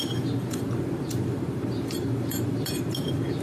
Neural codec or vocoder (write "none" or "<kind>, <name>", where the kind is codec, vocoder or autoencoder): vocoder, BigVGAN v2